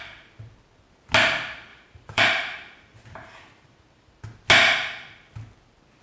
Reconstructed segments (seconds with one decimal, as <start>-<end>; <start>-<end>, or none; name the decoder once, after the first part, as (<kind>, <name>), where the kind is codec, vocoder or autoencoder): 1.7-4.1 (vocoder, BigVGAN v2)